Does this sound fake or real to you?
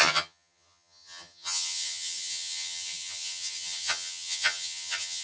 fake